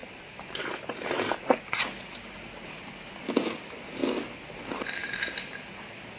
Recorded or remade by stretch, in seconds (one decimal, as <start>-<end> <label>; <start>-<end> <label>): 0.0-3.2 remade; 3.2-5.0 recorded; 5.0-5.8 remade; 5.8-6.2 recorded